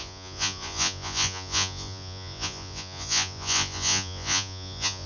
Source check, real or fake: fake